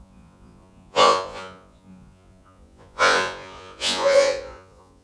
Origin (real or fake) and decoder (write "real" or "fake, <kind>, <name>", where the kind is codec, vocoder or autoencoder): fake, vocoder, Vocos